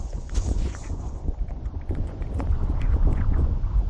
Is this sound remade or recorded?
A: remade